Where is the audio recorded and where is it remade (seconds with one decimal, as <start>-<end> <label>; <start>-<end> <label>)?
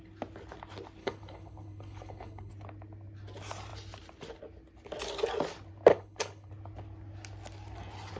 0.0-1.0 recorded; 1.0-2.5 remade; 2.5-5.9 recorded; 5.9-6.5 remade; 6.5-8.2 recorded